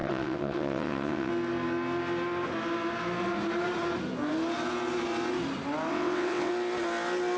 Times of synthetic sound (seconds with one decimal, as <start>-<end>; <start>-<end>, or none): 0.0-1.3; 5.9-6.5